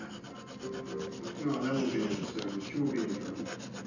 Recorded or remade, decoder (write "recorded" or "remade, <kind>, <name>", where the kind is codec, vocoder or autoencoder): recorded